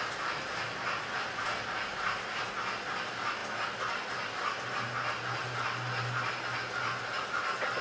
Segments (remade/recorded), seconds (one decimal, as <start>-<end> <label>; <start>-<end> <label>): 0.0-7.8 recorded